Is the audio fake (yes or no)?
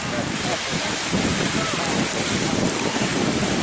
no